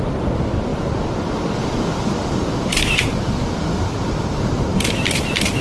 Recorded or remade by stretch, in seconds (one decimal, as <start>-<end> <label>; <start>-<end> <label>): 0.0-5.6 recorded